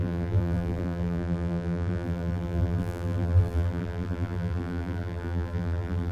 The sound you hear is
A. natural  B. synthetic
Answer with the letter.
B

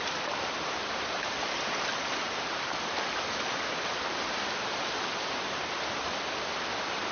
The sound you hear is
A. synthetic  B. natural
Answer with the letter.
A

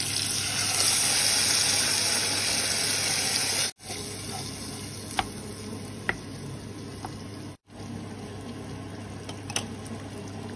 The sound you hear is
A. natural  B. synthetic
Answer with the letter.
A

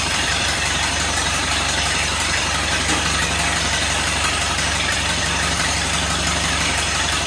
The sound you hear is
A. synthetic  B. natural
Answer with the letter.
A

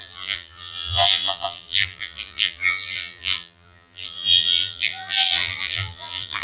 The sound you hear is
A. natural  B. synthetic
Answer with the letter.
B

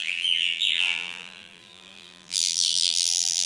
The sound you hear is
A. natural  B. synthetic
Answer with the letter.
B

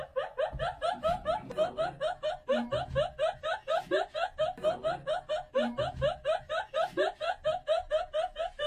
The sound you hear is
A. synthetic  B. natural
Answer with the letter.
B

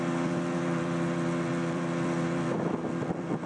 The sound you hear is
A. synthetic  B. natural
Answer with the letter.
A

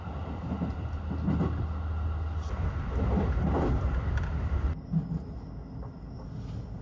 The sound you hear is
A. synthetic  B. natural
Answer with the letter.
B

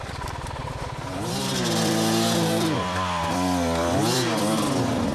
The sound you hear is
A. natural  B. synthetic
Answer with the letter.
B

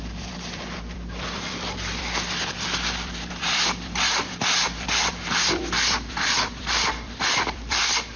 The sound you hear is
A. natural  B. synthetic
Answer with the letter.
B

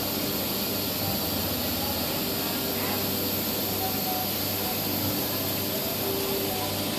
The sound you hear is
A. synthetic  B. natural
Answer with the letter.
B